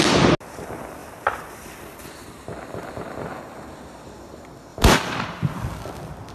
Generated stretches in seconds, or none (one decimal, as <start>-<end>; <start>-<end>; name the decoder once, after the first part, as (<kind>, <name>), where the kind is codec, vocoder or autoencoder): 1.0-2.3 (vocoder, BigVGAN v2); 4.7-6.3